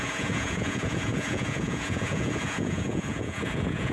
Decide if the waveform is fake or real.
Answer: fake